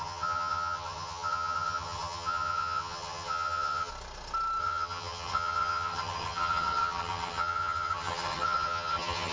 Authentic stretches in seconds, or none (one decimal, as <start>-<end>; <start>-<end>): 3.9-4.6